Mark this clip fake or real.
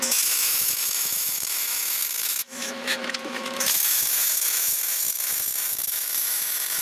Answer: fake